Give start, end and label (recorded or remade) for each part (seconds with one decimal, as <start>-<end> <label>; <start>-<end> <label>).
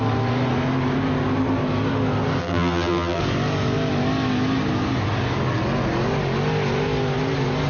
0.0-2.4 recorded; 2.4-3.2 remade; 3.2-7.7 recorded